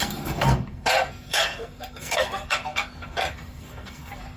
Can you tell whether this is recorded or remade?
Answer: remade